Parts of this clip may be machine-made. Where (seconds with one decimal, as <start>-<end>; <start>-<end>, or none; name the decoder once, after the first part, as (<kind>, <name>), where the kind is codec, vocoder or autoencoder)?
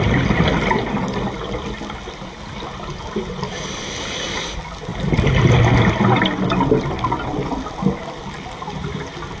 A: none